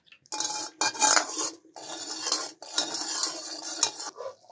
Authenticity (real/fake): real